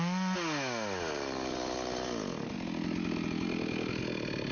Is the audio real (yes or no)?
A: yes